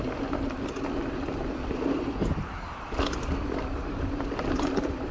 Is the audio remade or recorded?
remade